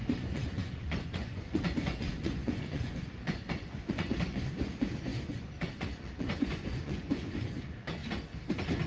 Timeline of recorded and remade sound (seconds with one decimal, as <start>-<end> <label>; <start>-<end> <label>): 0.0-8.0 remade; 8.0-8.9 recorded